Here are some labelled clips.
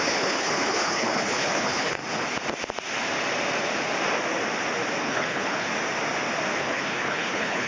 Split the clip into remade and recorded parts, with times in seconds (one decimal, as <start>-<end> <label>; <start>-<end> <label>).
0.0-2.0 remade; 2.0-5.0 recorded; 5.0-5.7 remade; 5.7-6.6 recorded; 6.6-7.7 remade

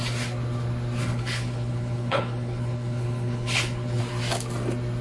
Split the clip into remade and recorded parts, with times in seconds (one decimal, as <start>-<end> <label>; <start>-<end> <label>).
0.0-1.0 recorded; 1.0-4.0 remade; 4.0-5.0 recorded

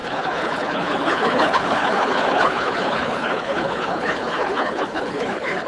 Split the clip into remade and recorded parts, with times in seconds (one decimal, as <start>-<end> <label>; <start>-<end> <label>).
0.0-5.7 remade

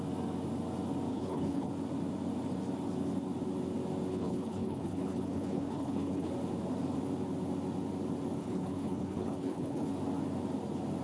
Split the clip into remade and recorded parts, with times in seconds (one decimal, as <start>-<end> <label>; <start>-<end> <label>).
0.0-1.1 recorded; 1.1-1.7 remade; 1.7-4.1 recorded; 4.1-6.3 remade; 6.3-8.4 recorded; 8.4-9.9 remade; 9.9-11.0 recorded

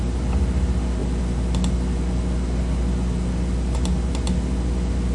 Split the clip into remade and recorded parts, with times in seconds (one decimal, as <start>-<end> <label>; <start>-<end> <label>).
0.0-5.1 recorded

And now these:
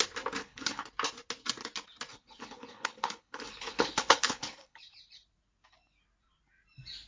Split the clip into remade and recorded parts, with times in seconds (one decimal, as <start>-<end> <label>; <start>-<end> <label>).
0.0-0.4 recorded; 0.4-0.9 remade; 0.9-2.1 recorded; 2.1-4.8 remade; 4.8-7.1 recorded

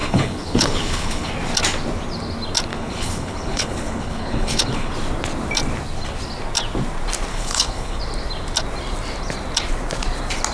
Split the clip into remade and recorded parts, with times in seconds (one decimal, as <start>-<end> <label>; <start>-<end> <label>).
0.0-1.3 remade; 1.3-2.7 recorded; 2.7-4.9 remade; 4.9-7.3 recorded; 7.3-8.0 remade; 8.0-10.5 recorded